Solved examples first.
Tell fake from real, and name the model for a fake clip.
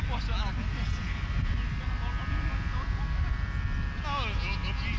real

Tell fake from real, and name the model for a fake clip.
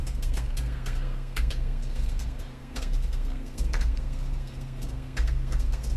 fake, codec, SNAC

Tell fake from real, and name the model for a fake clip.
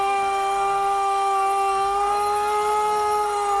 fake, codec, SNAC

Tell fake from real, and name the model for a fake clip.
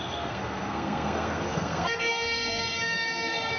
fake, codec, SNAC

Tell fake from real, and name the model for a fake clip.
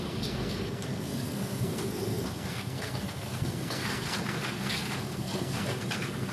fake, codec, SNAC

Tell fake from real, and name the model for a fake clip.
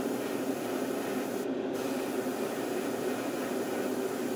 real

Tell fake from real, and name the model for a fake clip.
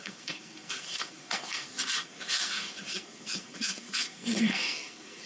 fake, codec, SNAC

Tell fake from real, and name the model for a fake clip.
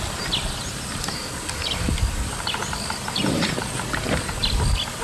real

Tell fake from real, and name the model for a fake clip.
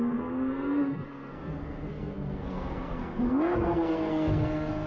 fake, codec, SNAC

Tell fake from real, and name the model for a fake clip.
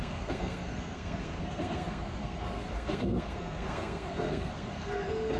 fake, codec, SNAC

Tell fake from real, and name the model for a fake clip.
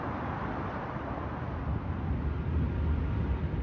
real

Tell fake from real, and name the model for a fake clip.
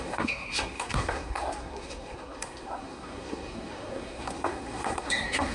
fake, codec, SNAC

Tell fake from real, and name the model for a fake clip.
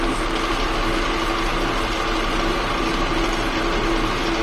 real